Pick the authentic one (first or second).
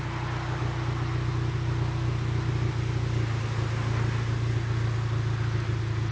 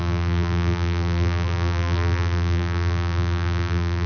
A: first